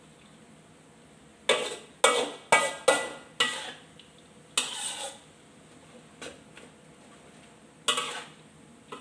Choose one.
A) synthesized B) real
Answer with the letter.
B